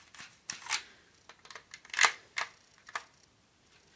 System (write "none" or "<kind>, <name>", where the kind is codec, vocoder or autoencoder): none